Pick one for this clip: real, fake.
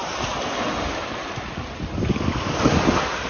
real